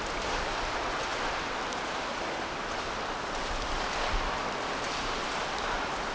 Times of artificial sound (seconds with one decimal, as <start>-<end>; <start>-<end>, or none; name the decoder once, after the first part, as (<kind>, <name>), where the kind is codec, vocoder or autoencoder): none